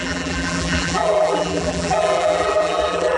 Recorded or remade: remade